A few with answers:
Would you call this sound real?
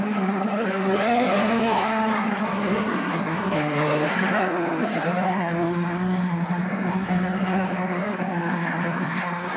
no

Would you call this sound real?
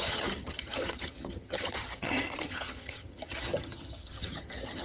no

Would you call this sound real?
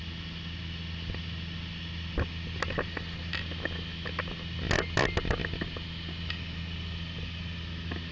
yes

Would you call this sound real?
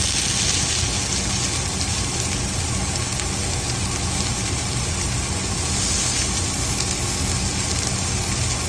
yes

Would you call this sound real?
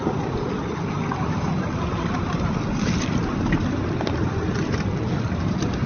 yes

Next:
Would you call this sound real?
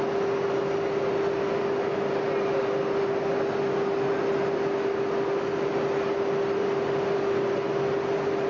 yes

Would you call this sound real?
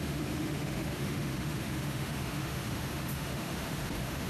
no